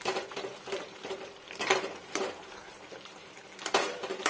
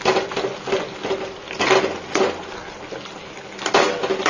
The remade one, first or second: first